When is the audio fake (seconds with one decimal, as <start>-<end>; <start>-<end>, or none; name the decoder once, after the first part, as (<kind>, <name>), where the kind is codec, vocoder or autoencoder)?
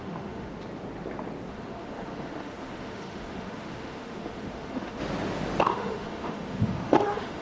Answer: 0.0-0.5 (autoencoder, DAC-VAE); 1.5-5.0; 5.6-7.4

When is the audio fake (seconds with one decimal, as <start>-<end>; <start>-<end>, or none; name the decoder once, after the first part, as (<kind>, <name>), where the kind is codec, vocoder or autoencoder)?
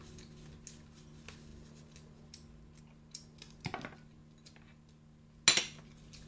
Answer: none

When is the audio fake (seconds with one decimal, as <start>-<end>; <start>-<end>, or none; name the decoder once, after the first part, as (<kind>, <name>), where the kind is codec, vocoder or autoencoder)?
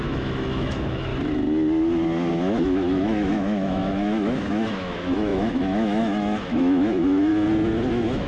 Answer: 0.0-1.1 (autoencoder, DAC-VAE); 2.3-7.3; 7.9-8.3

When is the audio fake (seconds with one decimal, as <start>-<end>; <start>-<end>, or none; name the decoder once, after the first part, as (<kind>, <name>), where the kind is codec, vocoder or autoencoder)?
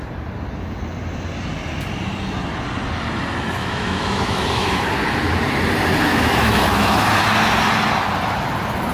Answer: 3.6-4.8 (autoencoder, DAC-VAE); 6.1-7.0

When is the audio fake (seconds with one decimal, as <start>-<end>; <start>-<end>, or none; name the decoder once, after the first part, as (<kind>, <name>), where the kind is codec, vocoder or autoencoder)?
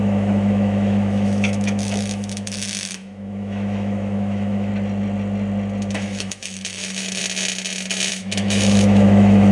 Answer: 0.0-4.7 (autoencoder, DAC-VAE); 5.9-7.2; 8.1-9.5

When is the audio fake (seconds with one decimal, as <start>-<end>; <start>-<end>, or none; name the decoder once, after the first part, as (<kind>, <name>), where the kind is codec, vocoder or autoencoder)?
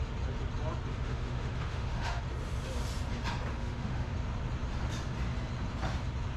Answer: 0.9-2.2 (autoencoder, DAC-VAE); 3.5-4.1